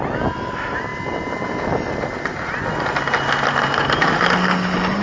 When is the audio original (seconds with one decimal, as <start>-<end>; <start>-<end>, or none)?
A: 0.0-5.0